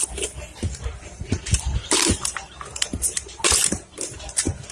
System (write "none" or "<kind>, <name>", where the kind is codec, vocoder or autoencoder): none